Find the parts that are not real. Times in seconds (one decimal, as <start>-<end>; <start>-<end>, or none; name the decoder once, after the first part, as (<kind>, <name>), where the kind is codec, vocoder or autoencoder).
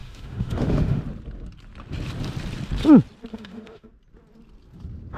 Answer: 0.0-1.0 (autoencoder, DAC-VAE); 3.3-3.9